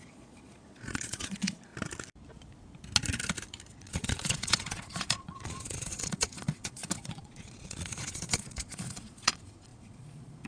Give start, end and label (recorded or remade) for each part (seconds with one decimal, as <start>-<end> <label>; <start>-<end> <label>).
0.0-1.7 remade; 1.7-3.7 recorded; 3.7-10.5 remade